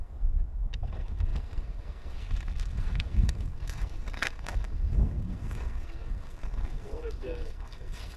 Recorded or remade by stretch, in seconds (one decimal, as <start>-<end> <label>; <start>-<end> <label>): 0.0-8.2 remade